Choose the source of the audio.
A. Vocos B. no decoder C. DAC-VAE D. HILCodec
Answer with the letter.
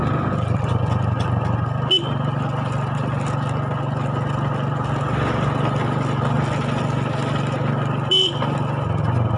B